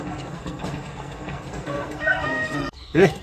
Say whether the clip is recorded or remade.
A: remade